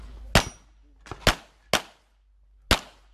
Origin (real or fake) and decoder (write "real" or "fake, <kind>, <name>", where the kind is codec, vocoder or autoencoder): real